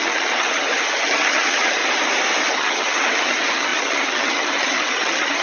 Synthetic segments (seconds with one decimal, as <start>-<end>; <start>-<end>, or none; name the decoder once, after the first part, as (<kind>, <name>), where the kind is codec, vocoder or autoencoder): 0.0-1.8 (vocoder, HiFi-GAN); 2.5-5.4